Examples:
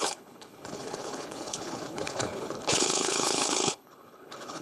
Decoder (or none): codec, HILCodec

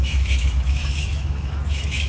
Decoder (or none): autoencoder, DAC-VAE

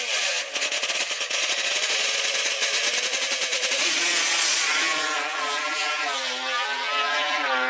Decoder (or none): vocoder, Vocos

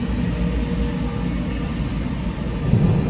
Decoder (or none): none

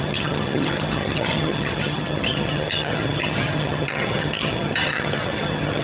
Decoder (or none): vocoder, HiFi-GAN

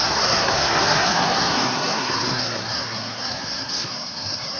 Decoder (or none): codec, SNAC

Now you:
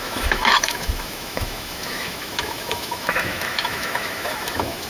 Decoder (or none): autoencoder, DAC-VAE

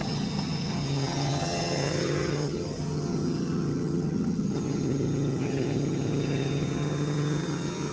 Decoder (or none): vocoder, HiFi-GAN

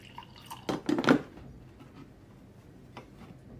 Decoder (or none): none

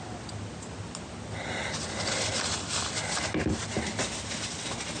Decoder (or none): none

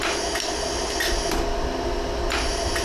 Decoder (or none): none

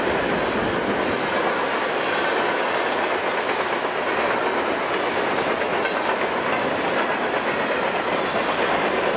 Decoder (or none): none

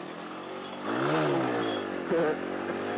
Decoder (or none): none